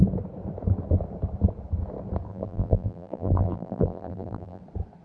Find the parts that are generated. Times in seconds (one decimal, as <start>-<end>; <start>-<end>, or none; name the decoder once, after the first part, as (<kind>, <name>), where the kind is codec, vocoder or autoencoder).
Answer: 2.3-4.6 (vocoder, BigVGAN v2)